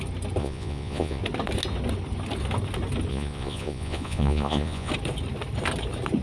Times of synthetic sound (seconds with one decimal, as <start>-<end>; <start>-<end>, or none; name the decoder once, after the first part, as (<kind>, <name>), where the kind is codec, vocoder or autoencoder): 0.4-1.2 (vocoder, Vocos); 3.1-4.9